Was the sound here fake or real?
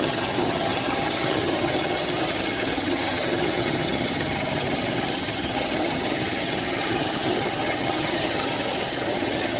fake